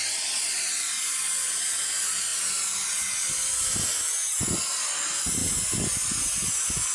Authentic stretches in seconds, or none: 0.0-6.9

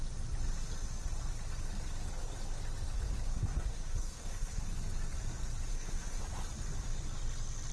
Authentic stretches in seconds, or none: 0.0-3.3; 4.6-5.7; 6.2-7.7

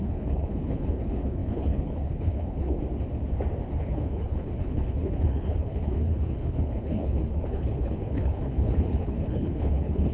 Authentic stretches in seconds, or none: 2.8-3.8

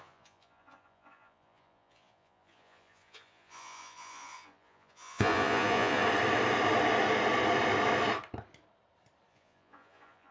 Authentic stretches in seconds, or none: 6.0-9.3

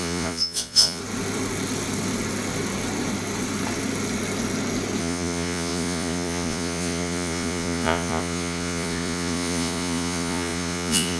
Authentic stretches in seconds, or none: 1.0-5.0

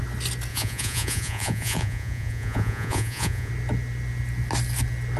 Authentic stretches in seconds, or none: 0.0-0.5; 3.5-5.2

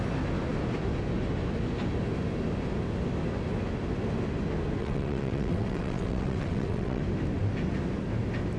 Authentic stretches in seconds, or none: 0.0-4.8; 7.0-8.6